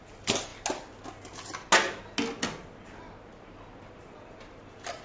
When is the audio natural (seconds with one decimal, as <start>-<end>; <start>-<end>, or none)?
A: 0.0-5.0